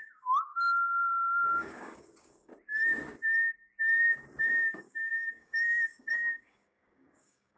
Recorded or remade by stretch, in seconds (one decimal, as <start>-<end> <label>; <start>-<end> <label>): 0.0-2.5 remade; 2.5-4.4 recorded; 4.4-7.6 remade